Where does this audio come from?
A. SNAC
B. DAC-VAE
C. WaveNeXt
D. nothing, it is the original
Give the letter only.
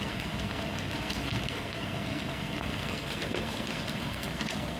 A